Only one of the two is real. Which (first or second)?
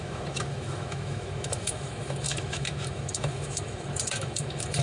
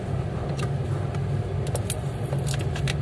second